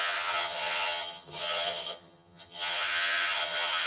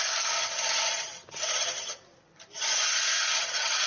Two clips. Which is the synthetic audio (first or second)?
first